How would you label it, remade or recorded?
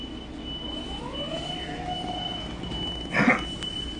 recorded